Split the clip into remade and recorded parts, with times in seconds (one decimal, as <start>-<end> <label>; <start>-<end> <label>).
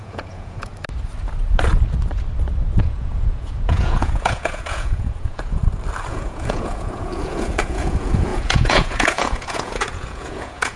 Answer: 0.0-0.7 remade; 0.7-2.8 recorded; 2.8-5.6 remade; 5.6-6.1 recorded; 6.1-10.8 remade